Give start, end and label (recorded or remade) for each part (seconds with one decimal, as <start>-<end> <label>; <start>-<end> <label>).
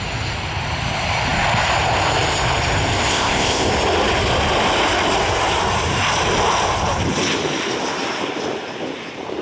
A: 0.0-3.1 recorded; 3.1-3.7 remade; 3.7-9.4 recorded